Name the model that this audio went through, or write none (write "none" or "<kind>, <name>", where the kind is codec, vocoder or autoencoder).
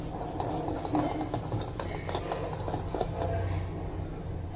none